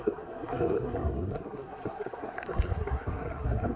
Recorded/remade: remade